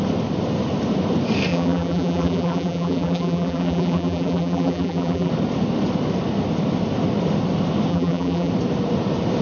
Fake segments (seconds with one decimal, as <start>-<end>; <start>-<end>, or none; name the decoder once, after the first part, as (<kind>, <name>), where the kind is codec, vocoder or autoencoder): 1.5-5.3 (vocoder, BigVGAN v2); 7.9-8.5

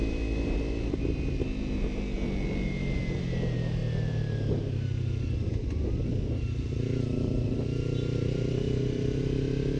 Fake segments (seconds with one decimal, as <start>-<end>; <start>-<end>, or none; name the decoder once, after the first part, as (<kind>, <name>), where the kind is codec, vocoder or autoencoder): none

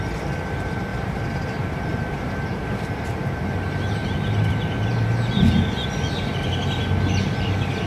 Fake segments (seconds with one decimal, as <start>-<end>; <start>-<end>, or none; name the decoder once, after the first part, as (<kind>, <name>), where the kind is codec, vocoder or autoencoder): 0.9-4.5 (vocoder, BigVGAN v2)

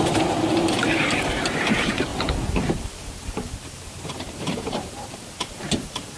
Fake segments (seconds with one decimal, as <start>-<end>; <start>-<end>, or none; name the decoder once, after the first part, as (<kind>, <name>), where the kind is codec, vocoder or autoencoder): 0.0-2.1 (vocoder, BigVGAN v2); 2.7-6.2

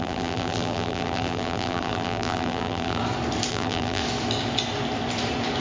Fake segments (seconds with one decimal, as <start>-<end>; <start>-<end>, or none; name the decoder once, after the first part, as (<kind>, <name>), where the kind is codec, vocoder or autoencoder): 0.0-3.0 (vocoder, BigVGAN v2); 3.5-4.0

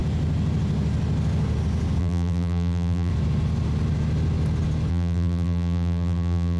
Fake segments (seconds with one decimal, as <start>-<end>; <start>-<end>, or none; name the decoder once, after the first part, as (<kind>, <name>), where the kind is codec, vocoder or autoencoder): 2.0-3.1 (vocoder, BigVGAN v2); 4.9-6.6

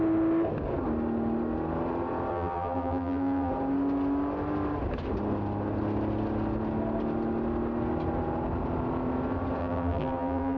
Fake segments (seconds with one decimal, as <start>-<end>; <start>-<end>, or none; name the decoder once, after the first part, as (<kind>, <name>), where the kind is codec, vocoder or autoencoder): 2.3-3.5 (vocoder, BigVGAN v2); 9.6-10.6